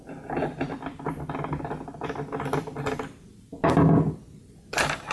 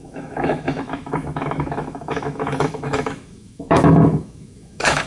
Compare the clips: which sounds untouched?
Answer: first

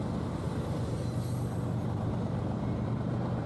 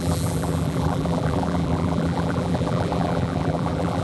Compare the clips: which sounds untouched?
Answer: first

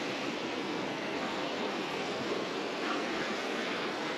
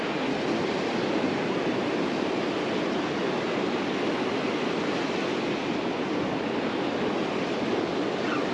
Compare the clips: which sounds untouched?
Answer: second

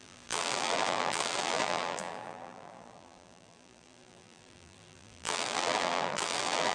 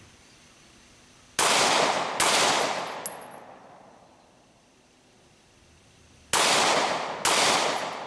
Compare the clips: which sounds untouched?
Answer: second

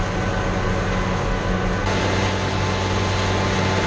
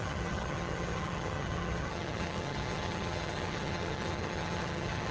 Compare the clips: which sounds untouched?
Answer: first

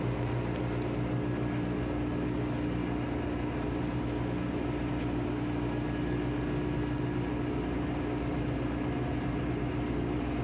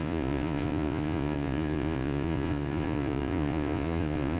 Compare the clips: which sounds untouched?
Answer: first